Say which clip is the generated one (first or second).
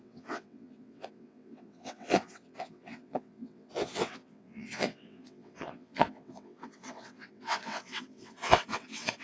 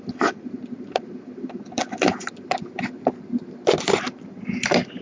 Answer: first